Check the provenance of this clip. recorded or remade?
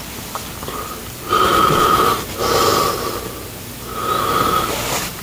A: remade